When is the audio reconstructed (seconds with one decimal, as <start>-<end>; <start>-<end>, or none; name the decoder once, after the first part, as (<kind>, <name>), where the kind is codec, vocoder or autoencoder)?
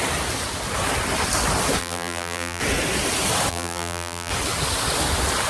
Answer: 1.8-2.6 (vocoder, BigVGAN v2); 3.5-4.3